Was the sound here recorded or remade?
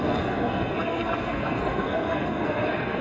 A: remade